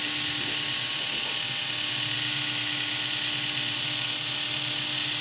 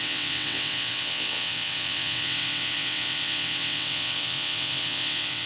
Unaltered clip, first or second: first